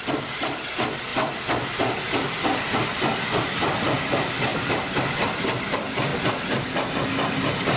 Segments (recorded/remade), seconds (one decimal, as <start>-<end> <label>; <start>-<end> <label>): 0.0-7.8 recorded